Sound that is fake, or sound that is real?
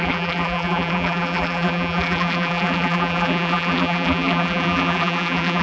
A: fake